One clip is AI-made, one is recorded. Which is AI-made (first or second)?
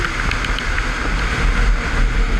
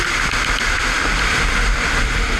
second